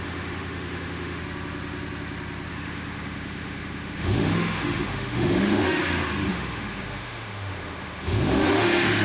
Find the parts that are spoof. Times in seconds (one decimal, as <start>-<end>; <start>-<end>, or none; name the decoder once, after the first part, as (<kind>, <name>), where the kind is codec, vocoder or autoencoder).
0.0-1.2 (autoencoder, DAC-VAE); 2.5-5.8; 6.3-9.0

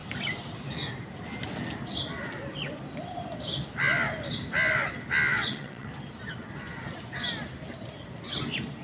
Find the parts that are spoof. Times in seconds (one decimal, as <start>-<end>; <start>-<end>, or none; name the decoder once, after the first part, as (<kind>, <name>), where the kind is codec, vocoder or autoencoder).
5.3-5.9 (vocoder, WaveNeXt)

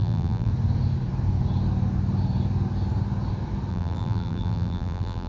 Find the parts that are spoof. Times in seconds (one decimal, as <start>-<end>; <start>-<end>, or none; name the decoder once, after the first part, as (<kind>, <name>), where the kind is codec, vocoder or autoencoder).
0.0-0.5 (vocoder, BigVGAN v2); 3.7-5.3